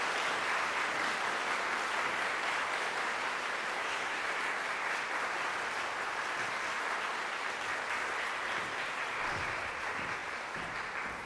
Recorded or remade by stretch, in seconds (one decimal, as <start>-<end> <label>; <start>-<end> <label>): 0.0-3.8 recorded; 3.8-4.3 remade; 4.3-11.3 recorded